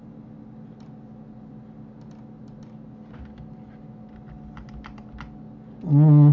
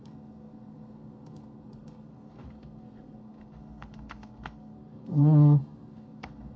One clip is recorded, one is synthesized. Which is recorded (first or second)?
first